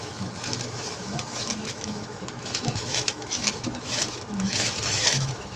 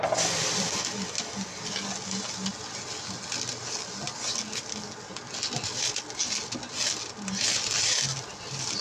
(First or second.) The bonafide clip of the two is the second